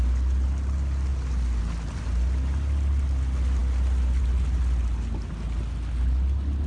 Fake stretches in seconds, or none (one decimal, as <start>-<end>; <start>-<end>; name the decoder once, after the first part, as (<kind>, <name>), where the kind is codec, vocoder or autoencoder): none